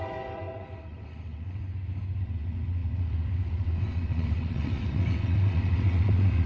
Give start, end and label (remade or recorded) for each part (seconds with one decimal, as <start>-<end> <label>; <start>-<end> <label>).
0.0-1.6 remade; 1.6-2.2 recorded; 2.2-6.5 remade